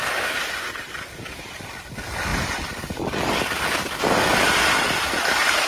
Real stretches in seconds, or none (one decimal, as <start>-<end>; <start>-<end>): 0.0-2.3; 3.2-5.7